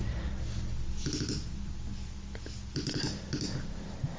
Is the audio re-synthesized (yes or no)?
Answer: no